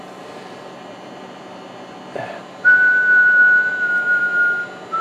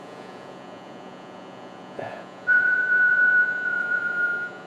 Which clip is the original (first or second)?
first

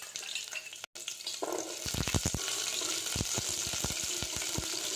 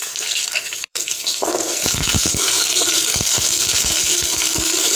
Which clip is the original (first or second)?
first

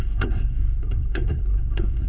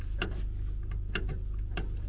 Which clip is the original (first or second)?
second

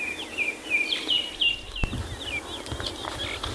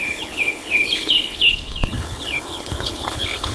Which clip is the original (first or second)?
first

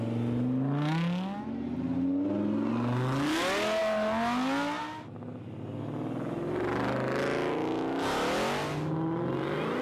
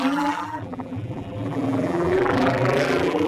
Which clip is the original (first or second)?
first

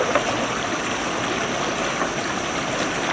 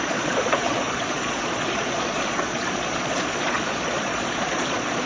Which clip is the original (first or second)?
first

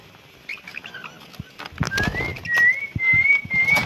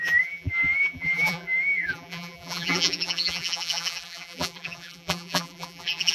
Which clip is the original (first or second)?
first